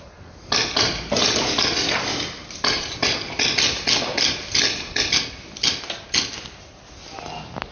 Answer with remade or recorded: recorded